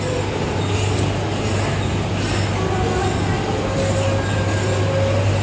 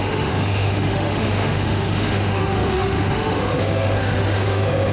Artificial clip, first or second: second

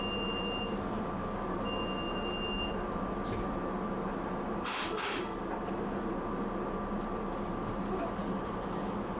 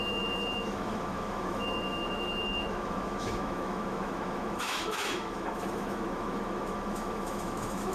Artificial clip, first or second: second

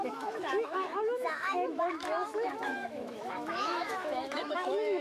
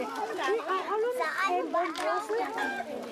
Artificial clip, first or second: first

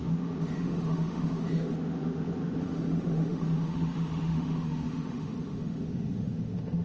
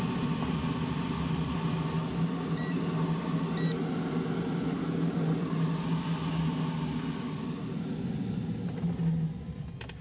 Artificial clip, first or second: first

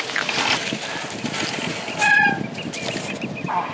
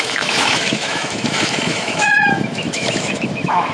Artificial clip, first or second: second